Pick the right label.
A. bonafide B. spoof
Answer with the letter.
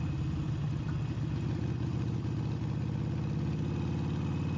A